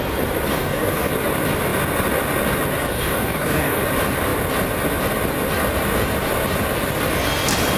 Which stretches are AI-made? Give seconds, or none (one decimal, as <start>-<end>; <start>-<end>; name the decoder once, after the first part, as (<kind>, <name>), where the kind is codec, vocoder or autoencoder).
0.5-1.1 (codec, DAC); 2.8-3.8